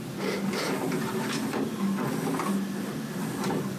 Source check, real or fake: real